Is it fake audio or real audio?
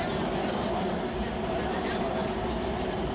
real